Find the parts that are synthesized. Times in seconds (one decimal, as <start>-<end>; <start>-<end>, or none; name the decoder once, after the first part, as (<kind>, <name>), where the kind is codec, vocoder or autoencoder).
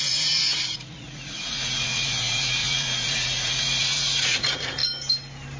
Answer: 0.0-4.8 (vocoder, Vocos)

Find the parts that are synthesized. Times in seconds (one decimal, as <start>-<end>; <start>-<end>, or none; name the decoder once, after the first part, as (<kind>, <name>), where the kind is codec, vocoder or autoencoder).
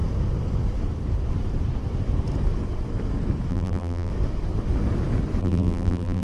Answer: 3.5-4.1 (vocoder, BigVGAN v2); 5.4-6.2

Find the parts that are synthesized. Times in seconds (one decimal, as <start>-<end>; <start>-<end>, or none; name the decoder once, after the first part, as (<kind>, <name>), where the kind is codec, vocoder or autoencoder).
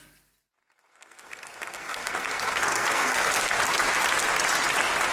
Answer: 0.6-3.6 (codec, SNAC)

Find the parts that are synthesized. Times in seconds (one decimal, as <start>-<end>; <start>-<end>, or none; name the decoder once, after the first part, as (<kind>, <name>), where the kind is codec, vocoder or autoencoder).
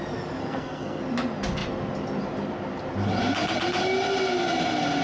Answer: 0.4-1.0 (codec, SNAC)